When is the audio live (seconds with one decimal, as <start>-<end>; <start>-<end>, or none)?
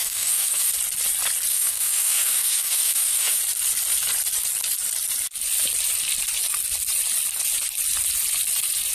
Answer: 0.7-1.5; 3.4-8.9